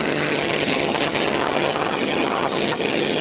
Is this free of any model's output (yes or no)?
no